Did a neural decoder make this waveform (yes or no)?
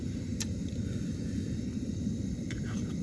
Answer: no